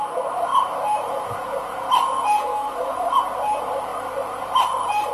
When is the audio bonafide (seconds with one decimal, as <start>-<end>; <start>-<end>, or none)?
0.0-2.5; 3.2-5.1